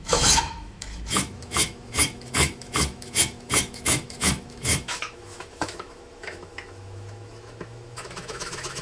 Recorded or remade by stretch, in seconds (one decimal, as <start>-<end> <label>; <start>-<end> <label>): 0.0-8.8 remade